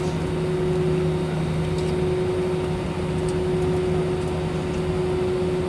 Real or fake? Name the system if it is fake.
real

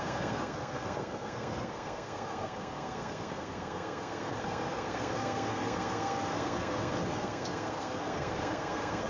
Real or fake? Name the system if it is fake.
fake, codec, SNAC